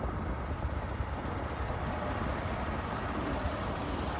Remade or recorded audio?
recorded